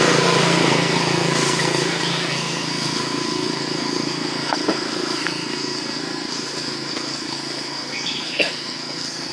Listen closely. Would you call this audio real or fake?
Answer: fake